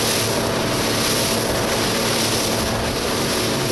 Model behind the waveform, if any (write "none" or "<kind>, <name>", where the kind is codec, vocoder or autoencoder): none